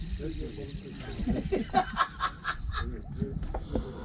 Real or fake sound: real